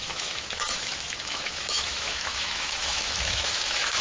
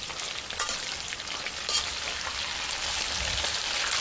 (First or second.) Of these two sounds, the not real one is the first